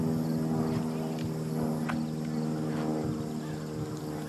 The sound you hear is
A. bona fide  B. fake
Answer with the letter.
A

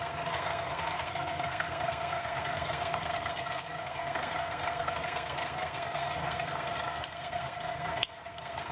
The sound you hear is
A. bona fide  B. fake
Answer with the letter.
B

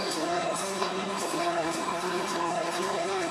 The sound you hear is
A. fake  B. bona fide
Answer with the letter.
A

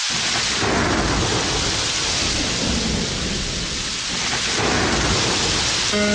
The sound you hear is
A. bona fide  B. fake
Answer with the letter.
A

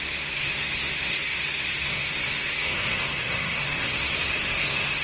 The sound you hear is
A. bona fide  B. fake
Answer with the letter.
B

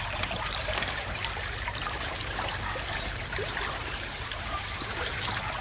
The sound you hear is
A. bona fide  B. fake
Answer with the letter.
B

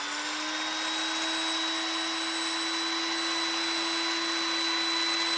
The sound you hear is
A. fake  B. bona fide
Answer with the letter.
B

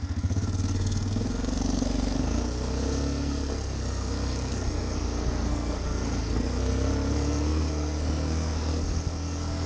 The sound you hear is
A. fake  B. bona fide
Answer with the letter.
A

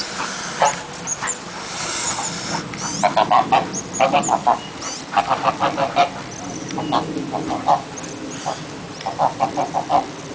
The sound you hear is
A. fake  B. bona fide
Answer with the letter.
B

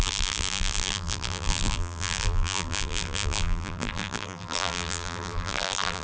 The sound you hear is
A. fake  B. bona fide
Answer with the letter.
A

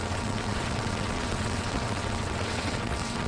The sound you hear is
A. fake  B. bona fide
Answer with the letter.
A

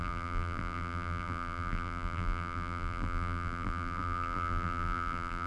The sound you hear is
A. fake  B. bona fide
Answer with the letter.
A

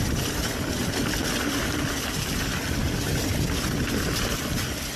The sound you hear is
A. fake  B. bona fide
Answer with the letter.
B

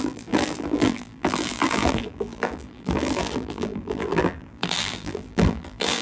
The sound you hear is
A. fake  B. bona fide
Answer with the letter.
A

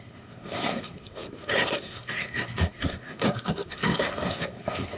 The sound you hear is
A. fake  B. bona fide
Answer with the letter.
A